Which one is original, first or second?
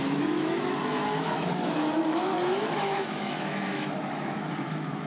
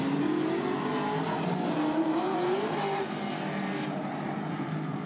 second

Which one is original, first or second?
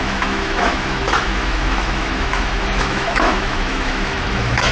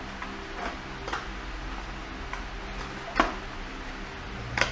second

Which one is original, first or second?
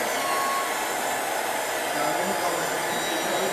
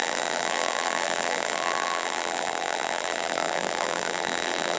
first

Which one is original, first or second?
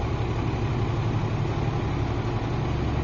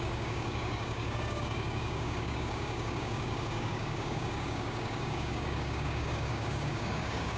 first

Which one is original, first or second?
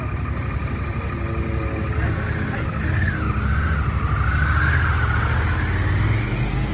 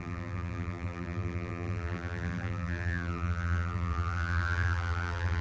first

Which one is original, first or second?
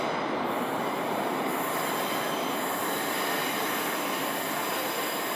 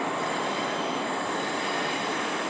first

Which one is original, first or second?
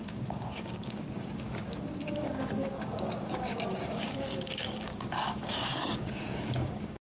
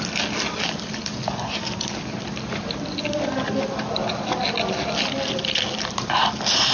second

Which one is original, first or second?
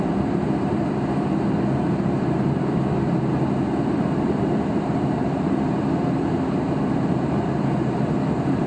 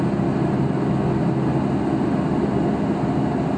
second